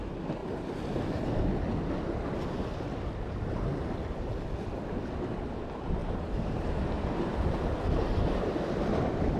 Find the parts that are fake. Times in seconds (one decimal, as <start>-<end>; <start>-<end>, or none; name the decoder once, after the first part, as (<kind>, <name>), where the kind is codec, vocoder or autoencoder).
0.4-1.2 (vocoder, BigVGAN v2); 6.0-6.7